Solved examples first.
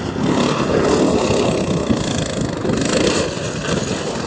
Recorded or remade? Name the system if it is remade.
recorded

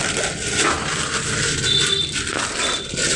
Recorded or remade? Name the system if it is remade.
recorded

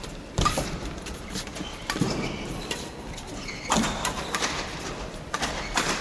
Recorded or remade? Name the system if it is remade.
remade, vocoder, BigVGAN v2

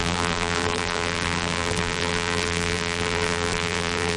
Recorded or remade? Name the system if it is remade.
remade, vocoder, BigVGAN v2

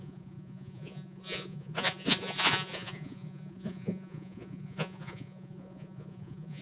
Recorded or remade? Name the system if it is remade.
remade, vocoder, Vocos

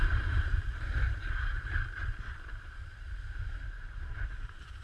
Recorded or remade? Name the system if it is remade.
remade, vocoder, BigVGAN v2